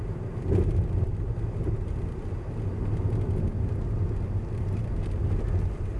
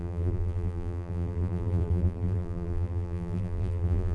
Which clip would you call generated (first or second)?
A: second